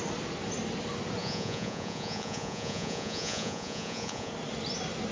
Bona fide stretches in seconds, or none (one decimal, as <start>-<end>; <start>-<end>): 0.0-1.2; 4.3-5.1